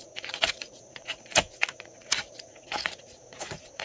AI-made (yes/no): yes